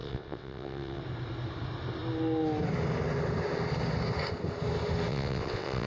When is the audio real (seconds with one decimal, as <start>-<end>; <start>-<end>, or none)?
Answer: 1.0-5.1